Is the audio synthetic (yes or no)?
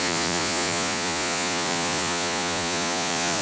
yes